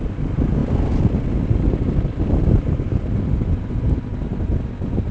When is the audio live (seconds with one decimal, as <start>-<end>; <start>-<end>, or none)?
0.0-5.1